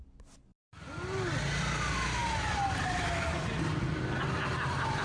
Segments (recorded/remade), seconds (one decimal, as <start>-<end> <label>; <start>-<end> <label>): 0.0-5.0 recorded